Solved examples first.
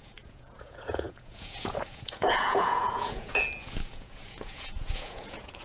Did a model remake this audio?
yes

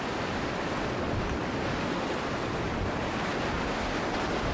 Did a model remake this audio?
no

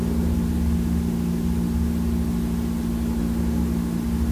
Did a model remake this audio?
no